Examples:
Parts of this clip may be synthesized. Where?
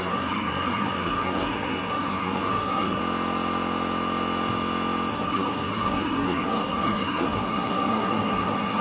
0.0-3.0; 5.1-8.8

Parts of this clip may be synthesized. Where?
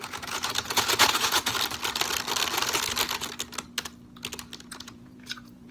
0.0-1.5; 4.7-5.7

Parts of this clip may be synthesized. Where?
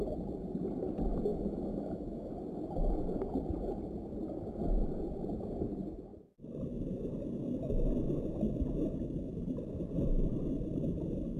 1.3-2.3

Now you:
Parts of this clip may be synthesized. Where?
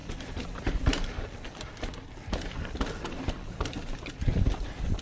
0.0-3.0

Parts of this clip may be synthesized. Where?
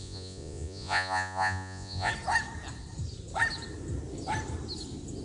0.0-2.1